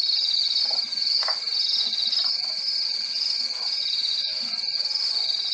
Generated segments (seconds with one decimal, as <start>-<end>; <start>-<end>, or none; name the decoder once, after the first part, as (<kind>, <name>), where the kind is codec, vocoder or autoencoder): none